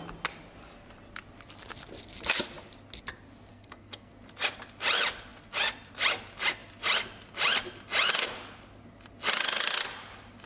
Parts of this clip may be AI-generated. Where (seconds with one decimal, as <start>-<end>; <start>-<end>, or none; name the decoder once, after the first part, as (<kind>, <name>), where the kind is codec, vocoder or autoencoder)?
3.5-4.1 (codec, SNAC)